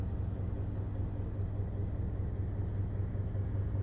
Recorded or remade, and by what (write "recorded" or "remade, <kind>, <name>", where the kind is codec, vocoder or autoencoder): recorded